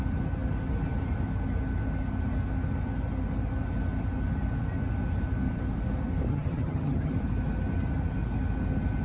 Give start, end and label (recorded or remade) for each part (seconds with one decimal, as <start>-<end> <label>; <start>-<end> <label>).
0.0-6.3 recorded; 6.3-7.1 remade; 7.1-9.0 recorded